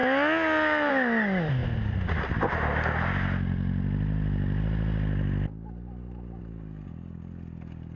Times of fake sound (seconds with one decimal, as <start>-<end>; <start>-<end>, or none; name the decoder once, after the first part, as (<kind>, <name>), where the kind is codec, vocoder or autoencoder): none